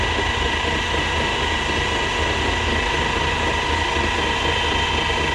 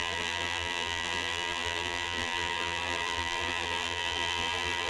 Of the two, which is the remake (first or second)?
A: second